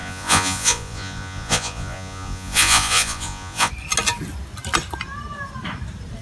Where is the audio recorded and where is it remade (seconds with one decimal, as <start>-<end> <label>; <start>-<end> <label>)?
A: 0.0-3.7 remade; 3.7-6.2 recorded